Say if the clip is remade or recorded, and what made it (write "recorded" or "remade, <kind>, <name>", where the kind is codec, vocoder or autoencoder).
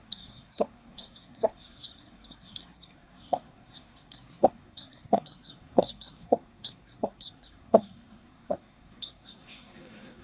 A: remade, codec, SNAC